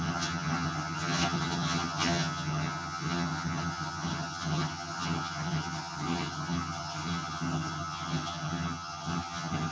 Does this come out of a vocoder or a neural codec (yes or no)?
yes